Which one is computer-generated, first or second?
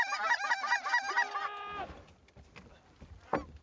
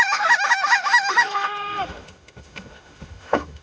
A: second